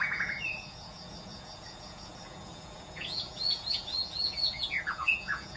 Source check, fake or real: fake